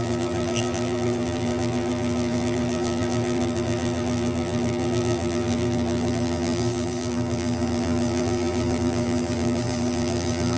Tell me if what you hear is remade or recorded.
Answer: remade